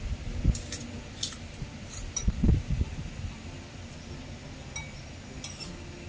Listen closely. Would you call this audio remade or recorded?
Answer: recorded